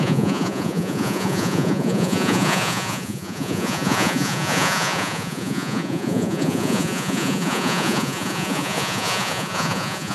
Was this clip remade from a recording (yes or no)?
yes